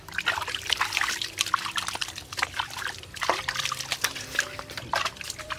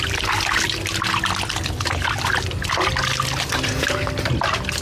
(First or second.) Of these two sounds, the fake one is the first